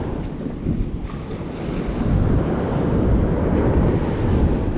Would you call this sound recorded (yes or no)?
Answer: yes